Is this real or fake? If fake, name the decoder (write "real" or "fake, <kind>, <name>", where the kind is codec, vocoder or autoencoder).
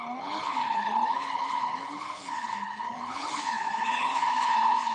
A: fake, codec, HILCodec